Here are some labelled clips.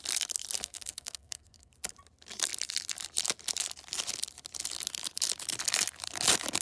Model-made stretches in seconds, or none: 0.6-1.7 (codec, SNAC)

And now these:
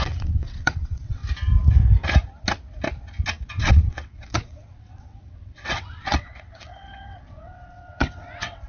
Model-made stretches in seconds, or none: 0.0-1.2 (vocoder, WaveNeXt); 3.5-8.7

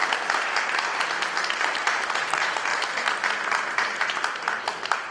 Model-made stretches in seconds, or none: 1.6-5.1 (vocoder, BigVGAN v2)

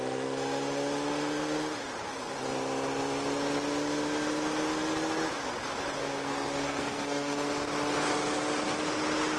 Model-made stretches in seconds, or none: 6.0-7.5 (codec, SNAC)